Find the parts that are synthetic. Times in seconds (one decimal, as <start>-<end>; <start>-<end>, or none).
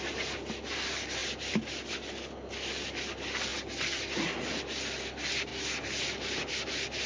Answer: none